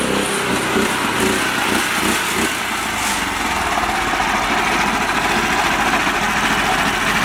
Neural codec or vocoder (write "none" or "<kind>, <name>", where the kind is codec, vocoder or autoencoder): none